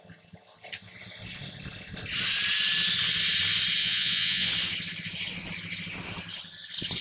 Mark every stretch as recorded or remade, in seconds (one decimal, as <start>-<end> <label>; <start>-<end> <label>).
0.0-3.8 recorded; 3.8-4.5 remade; 4.5-7.0 recorded